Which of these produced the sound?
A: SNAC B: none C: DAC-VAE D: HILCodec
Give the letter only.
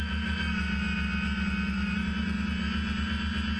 B